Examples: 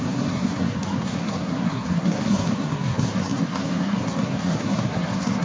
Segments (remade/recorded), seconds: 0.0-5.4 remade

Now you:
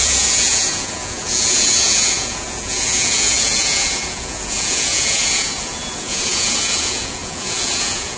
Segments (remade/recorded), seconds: 0.0-8.2 remade